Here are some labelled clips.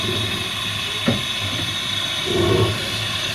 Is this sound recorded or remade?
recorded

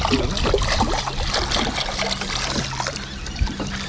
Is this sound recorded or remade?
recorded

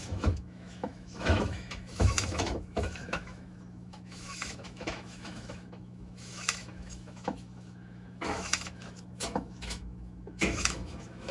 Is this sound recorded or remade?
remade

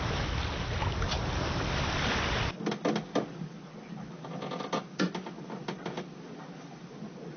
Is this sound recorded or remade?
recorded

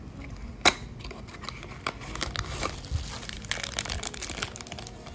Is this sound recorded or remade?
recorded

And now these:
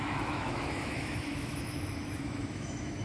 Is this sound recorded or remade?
remade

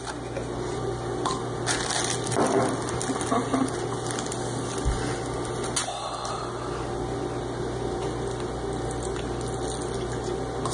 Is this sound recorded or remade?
recorded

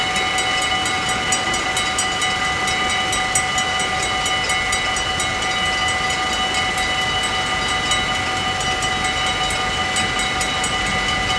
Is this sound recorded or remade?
recorded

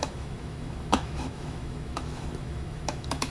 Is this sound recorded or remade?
remade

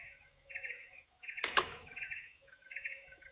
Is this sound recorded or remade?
remade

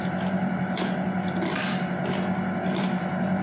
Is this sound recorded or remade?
recorded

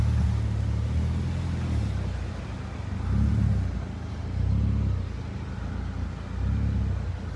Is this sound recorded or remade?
recorded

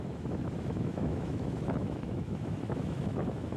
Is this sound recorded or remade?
remade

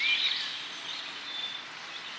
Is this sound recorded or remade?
recorded